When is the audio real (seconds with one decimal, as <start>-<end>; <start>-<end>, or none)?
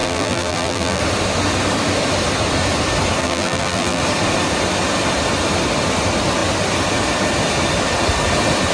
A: 1.0-3.2; 4.0-8.7